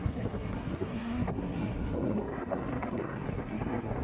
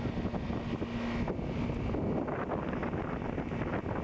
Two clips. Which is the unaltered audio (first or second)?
second